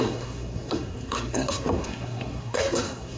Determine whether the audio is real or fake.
fake